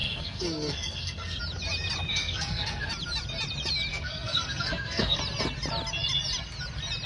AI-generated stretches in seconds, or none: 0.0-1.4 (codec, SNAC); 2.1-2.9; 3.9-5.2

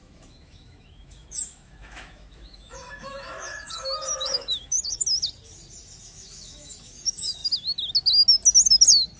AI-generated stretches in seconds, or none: 0.0-5.0 (autoencoder, DAC-VAE); 6.0-7.4

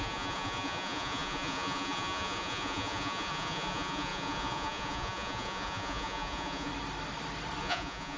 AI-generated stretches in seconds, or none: 0.0-6.7 (vocoder, Vocos); 7.6-8.2

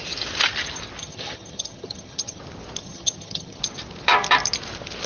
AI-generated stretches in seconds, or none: 1.0-2.4 (vocoder, HiFi-GAN); 2.8-3.6

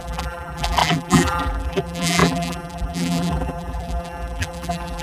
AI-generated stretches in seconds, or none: 0.0-5.0 (vocoder, BigVGAN v2)

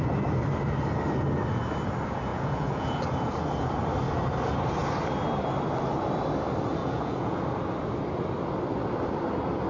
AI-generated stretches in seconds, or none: 2.3-2.9 (vocoder, Vocos); 6.8-7.4

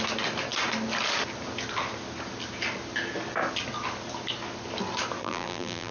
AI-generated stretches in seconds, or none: 5.2-5.9 (vocoder, BigVGAN v2)